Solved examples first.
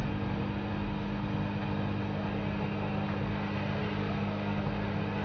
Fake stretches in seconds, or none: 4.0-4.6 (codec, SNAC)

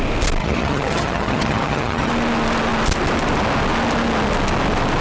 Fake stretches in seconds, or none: 0.4-2.1 (vocoder, HiFi-GAN)

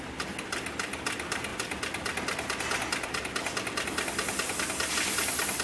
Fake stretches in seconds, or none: none

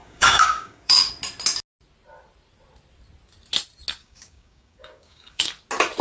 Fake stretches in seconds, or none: 0.0-1.1 (codec, DAC); 4.0-5.5

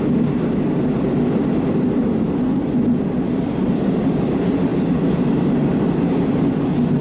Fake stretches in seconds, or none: none

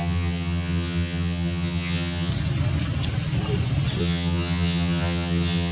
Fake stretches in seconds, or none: 0.0-2.3 (vocoder, HiFi-GAN); 4.0-5.7